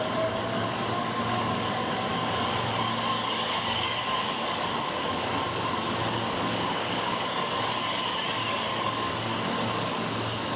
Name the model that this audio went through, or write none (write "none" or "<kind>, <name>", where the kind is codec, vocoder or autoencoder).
codec, DAC